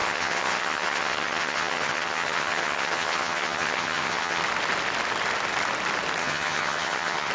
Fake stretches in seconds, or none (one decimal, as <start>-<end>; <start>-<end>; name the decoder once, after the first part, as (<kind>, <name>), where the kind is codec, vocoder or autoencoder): 0.0-4.4 (vocoder, HiFi-GAN); 6.2-7.3